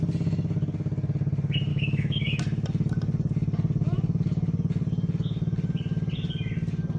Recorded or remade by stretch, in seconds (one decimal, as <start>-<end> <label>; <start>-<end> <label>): 0.0-1.7 recorded; 1.7-2.4 remade; 2.4-7.0 recorded